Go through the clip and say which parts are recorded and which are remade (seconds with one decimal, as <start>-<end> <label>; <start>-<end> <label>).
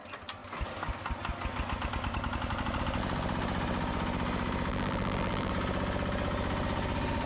0.0-4.7 recorded; 4.7-5.5 remade; 5.5-7.3 recorded